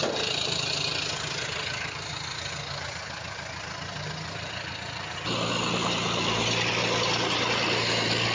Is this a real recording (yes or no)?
yes